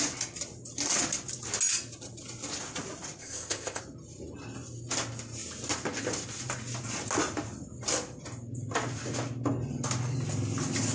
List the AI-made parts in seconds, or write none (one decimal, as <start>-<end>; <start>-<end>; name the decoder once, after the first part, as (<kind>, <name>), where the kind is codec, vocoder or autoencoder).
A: 3.2-3.8 (codec, ZipCodec)